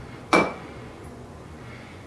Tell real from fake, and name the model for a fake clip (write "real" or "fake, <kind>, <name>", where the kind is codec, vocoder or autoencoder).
fake, vocoder, Vocos